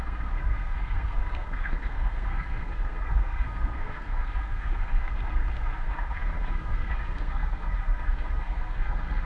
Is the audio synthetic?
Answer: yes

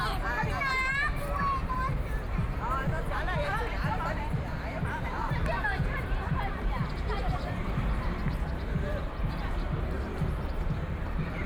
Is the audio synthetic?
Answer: yes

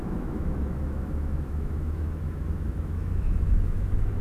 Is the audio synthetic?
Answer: yes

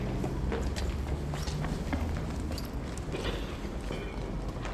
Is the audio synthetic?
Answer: no